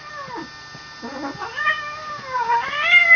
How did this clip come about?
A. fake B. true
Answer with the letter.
B